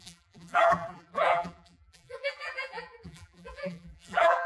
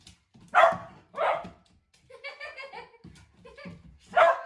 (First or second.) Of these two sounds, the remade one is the first